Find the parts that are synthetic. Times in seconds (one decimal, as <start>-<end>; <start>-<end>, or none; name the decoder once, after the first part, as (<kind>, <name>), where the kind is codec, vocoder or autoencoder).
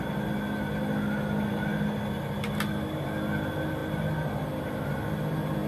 none